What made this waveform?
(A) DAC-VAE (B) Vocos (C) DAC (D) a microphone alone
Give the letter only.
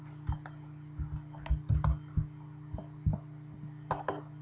D